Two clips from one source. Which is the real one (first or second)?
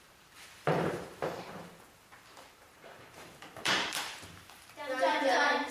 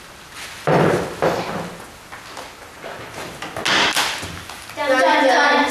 second